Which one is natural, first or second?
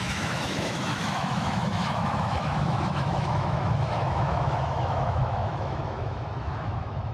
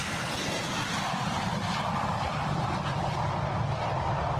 second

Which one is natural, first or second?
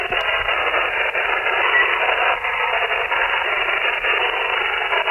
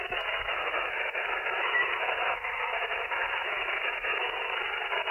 first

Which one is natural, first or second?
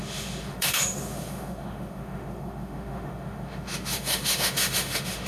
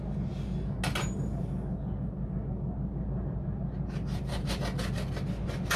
second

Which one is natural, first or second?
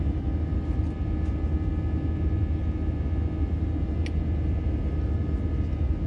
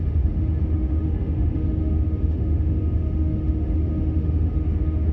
first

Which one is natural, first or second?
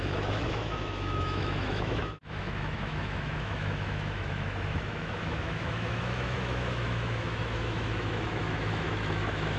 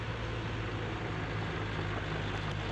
second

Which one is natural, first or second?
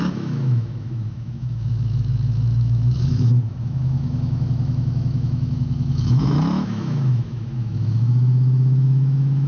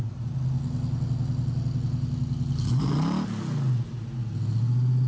second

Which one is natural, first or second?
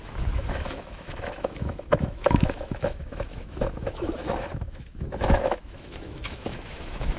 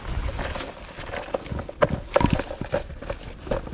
second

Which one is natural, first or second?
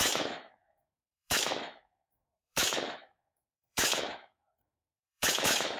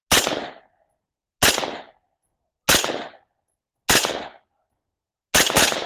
second